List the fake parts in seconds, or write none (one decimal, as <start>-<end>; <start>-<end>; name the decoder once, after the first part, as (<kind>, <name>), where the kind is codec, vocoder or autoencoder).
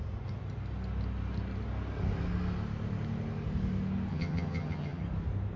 4.1-5.0 (vocoder, HiFi-GAN)